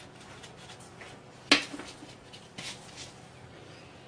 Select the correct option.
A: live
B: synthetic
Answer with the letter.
A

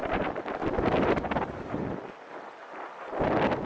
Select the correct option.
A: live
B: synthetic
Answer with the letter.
A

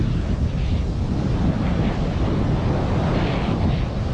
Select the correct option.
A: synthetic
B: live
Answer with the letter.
B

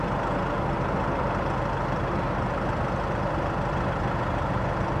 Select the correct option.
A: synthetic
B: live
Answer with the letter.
B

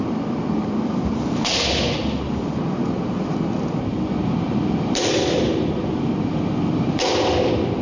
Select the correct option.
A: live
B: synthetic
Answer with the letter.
A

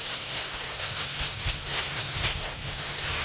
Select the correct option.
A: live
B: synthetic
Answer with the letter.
B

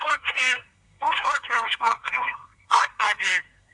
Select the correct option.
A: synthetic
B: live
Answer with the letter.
A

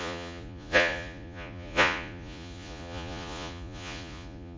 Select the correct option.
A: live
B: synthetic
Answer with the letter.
B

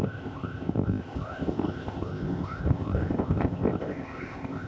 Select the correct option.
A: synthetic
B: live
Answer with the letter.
A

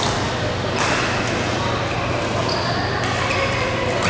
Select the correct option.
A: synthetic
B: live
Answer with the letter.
B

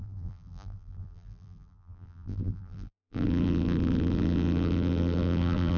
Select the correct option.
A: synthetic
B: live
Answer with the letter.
A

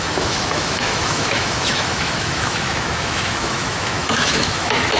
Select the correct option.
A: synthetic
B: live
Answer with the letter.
A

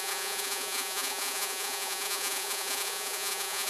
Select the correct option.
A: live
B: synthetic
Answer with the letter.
B